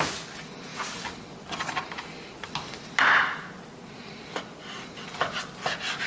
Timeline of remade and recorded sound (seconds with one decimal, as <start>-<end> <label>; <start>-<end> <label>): 0.0-6.1 recorded